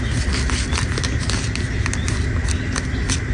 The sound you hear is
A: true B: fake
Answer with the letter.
A